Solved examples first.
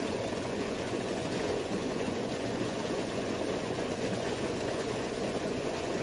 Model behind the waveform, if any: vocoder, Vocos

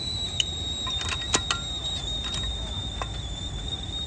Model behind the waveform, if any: none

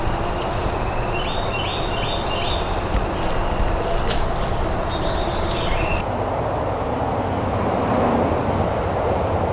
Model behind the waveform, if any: none